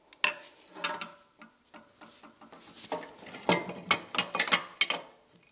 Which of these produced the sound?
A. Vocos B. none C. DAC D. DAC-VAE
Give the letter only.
B